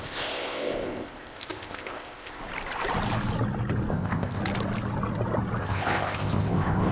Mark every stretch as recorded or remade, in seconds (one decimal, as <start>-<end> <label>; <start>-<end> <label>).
0.0-2.4 remade; 2.4-3.9 recorded; 3.9-4.4 remade; 4.4-5.6 recorded; 5.6-6.9 remade